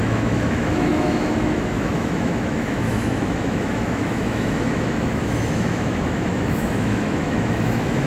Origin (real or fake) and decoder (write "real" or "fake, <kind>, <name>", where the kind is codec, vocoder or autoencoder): fake, autoencoder, DAC-VAE